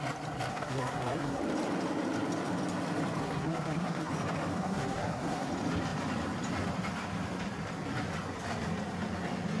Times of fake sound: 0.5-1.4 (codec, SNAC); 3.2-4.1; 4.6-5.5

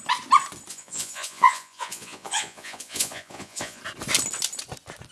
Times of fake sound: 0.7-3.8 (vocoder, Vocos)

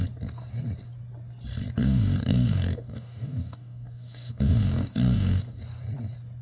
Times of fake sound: 1.8-5.6 (codec, DAC)

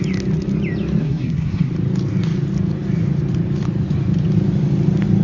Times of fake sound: 1.0-1.7 (codec, SNAC)

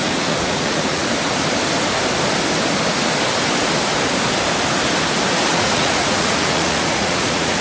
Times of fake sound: 0.0-1.0 (vocoder, Vocos); 5.5-7.6

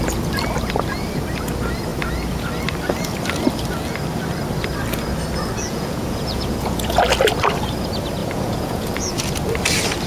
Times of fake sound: 5.7-7.0 (vocoder, Vocos); 8.2-9.1